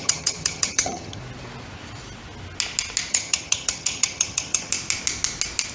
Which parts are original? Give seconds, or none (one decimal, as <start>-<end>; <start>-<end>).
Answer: 1.2-3.1; 4.7-5.7